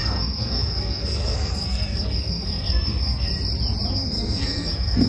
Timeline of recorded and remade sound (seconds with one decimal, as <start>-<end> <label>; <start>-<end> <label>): 0.0-3.3 remade; 3.3-3.9 recorded; 3.9-5.1 remade